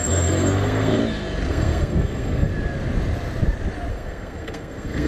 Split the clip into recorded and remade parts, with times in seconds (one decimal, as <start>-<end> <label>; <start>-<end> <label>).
0.0-1.0 remade; 1.0-1.5 recorded; 1.5-2.5 remade; 2.5-3.9 recorded; 3.9-5.1 remade